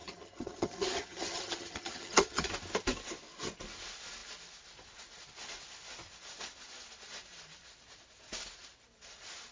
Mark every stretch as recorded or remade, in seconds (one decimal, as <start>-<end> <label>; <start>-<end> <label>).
0.0-2.5 remade; 2.5-9.5 recorded